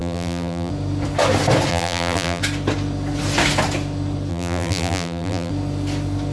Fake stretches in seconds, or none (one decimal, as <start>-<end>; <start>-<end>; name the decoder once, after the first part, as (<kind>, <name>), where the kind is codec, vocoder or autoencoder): 0.0-0.7 (vocoder, BigVGAN v2); 1.7-2.4; 4.3-5.5